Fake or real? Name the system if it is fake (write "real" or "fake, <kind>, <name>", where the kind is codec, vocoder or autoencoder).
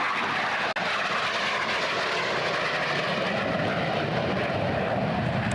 real